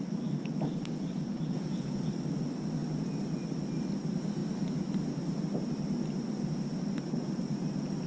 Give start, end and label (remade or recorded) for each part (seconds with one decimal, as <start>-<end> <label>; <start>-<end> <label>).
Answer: 0.0-1.3 recorded; 1.3-2.1 remade; 2.1-8.1 recorded